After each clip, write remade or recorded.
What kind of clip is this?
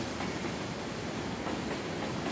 recorded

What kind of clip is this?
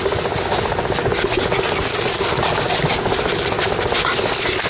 recorded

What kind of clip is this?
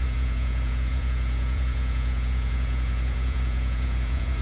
remade